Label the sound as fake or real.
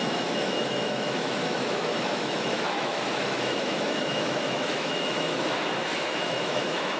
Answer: fake